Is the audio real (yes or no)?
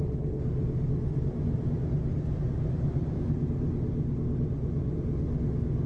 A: yes